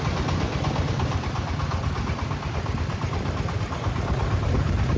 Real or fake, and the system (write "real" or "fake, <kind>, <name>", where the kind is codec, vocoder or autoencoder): real